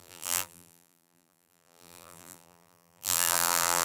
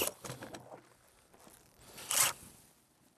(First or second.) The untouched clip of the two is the second